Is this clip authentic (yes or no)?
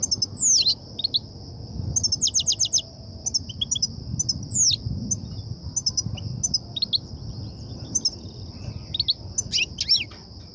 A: yes